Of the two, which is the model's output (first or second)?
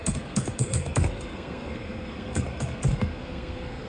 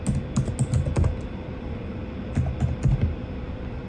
first